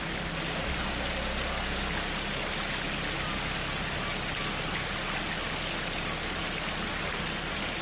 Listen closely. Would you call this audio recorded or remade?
recorded